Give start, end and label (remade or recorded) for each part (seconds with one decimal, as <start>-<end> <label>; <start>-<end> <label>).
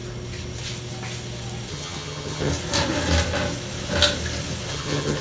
0.0-1.7 recorded; 1.7-2.5 remade; 2.5-4.7 recorded; 4.7-5.2 remade